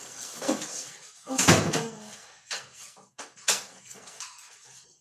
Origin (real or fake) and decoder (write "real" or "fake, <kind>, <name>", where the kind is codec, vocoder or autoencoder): fake, codec, SNAC